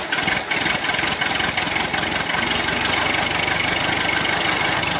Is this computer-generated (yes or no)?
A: no